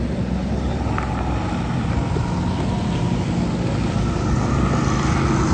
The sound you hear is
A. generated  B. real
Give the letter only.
B